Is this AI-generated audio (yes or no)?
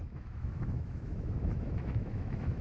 yes